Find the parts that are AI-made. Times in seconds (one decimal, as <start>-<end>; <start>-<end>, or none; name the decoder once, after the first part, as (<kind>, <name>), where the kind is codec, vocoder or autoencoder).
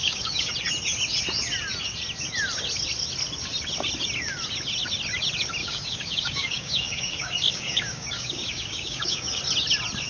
0.0-0.5 (codec, DAC); 5.6-9.4